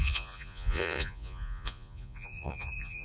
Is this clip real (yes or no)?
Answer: no